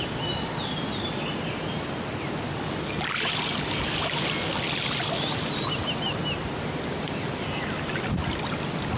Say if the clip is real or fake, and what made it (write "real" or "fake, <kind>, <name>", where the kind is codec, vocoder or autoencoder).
real